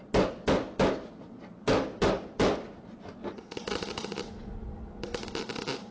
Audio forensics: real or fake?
real